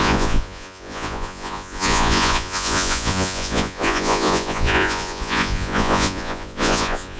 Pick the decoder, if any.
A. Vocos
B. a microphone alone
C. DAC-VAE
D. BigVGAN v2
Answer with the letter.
A